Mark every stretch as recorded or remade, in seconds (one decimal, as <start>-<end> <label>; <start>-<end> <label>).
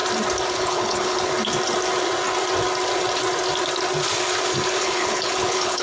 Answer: 0.0-0.5 recorded; 0.5-1.3 remade; 1.3-4.8 recorded; 4.8-5.8 remade